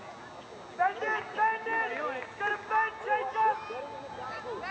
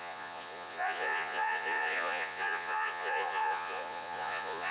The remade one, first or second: second